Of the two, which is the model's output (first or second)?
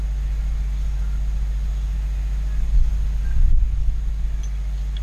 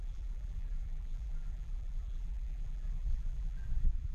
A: second